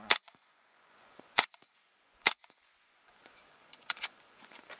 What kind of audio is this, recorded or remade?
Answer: remade